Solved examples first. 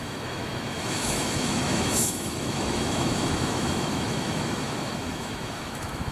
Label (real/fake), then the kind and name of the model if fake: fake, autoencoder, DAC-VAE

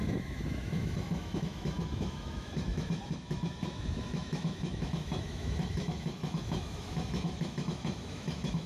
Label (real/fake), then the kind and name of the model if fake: fake, autoencoder, DAC-VAE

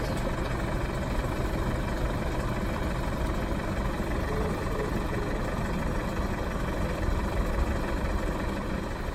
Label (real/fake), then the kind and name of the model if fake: real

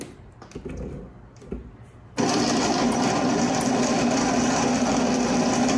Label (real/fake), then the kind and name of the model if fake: real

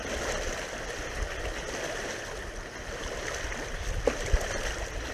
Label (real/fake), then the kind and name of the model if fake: real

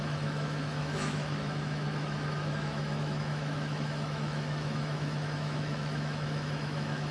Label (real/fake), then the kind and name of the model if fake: fake, autoencoder, DAC-VAE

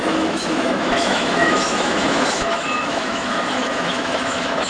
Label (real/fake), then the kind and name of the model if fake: fake, autoencoder, DAC-VAE